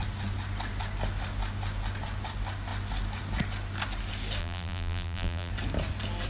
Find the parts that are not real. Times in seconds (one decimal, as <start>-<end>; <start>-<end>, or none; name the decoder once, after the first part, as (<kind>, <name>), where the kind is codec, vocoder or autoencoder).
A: 4.4-5.5 (vocoder, BigVGAN v2)